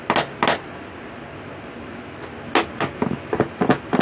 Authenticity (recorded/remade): recorded